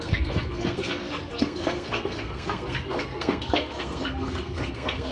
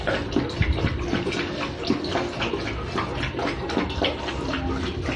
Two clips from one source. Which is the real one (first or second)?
second